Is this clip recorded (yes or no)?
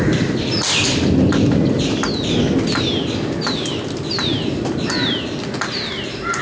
yes